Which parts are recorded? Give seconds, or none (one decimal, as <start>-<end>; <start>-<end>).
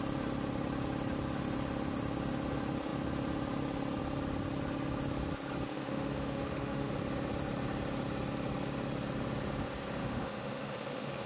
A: 0.0-5.7; 6.9-10.0